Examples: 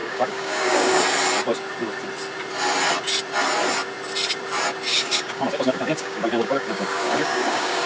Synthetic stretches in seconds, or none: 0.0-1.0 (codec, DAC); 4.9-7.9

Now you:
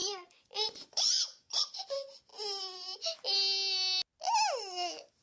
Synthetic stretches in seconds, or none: 0.0-1.8 (vocoder, Vocos)